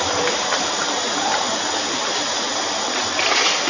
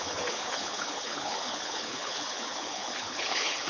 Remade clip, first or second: second